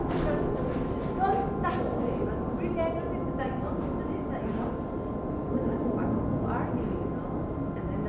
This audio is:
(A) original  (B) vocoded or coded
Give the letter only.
A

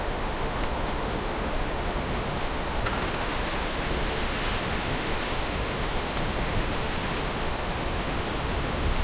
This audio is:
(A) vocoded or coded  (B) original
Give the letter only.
A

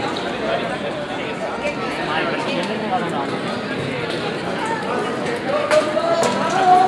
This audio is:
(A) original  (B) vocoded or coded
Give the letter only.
A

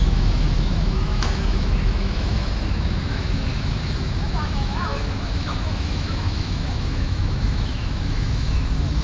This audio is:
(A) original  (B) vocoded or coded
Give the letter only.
B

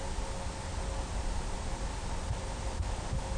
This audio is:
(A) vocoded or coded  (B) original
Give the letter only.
B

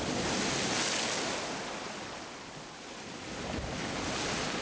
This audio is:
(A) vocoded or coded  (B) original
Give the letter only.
B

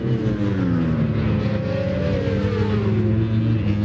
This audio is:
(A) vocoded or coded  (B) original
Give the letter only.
B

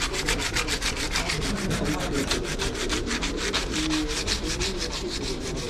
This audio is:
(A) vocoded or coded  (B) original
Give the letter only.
B